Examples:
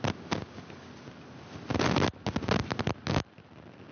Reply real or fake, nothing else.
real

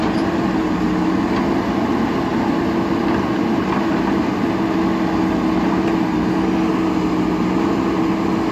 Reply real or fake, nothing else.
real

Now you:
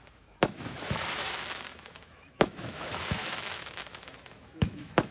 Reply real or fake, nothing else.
fake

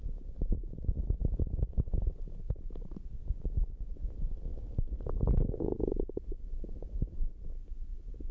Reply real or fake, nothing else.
real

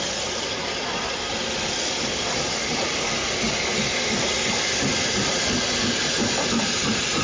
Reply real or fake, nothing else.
real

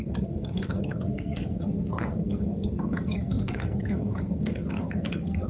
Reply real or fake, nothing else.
fake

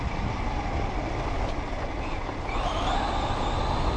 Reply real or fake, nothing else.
real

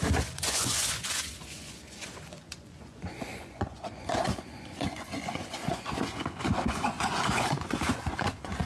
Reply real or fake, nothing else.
fake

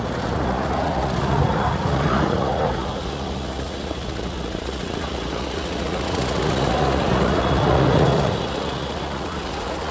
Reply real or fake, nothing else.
fake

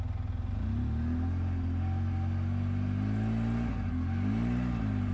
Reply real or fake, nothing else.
real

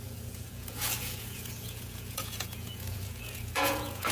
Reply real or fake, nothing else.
fake